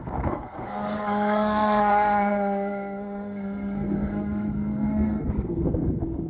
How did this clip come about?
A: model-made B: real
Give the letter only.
A